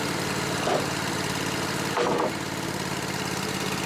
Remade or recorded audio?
remade